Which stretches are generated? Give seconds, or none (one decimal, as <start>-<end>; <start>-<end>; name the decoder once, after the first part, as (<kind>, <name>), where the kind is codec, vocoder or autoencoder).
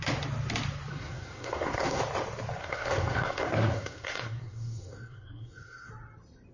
0.9-2.0 (codec, SNAC); 2.6-5.9